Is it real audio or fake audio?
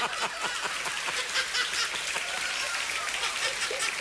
real